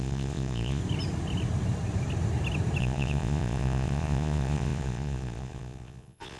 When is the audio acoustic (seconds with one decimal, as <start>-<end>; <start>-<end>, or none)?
0.8-2.8